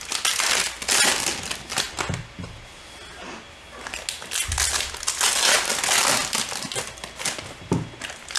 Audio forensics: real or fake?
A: real